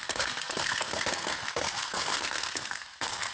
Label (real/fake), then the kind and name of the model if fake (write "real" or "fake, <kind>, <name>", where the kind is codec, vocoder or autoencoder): fake, codec, SNAC